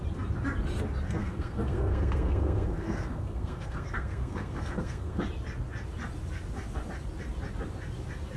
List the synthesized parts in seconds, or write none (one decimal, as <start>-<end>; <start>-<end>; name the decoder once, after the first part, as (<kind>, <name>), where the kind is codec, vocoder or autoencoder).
1.2-5.2 (codec, SNAC)